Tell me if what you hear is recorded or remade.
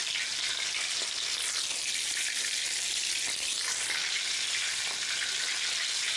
recorded